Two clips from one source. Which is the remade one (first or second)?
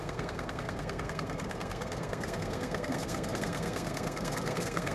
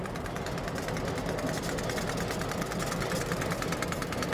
first